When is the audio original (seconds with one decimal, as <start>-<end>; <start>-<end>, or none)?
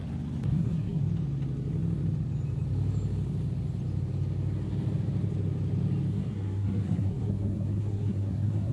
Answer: 0.0-0.5; 1.0-6.1